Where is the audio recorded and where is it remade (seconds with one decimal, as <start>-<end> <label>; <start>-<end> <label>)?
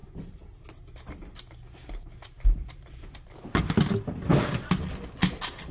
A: 0.0-5.7 recorded